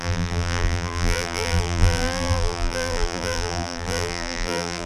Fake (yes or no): yes